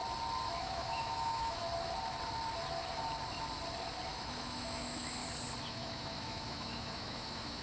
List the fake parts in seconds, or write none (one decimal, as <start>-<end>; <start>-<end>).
0.6-1.6; 4.1-5.2; 5.7-7.6